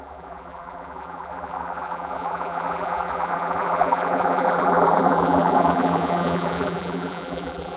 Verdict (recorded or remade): remade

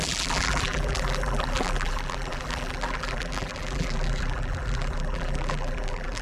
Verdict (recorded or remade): remade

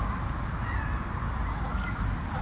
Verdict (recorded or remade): recorded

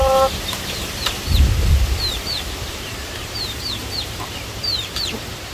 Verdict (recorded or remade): remade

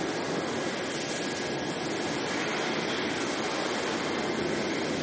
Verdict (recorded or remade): remade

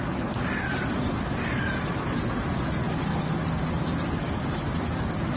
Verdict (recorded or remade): recorded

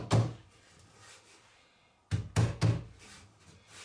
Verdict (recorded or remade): recorded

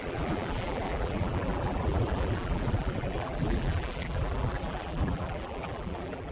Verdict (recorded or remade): remade